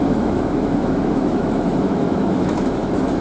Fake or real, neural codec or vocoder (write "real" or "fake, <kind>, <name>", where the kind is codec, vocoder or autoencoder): fake, autoencoder, DAC-VAE